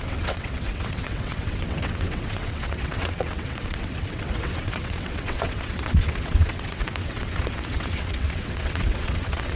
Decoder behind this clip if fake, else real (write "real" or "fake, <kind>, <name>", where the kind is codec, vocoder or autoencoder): fake, vocoder, WaveNeXt